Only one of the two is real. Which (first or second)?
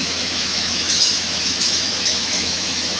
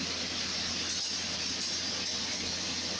second